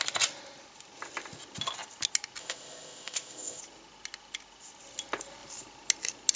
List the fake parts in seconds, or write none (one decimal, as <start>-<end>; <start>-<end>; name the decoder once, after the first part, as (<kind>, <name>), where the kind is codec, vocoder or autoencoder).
2.4-3.6 (codec, ZipCodec)